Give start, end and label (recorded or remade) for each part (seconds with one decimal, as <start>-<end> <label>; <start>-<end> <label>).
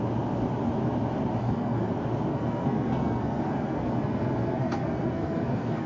0.0-1.4 recorded; 1.4-1.9 remade; 1.9-2.3 recorded; 2.3-5.9 remade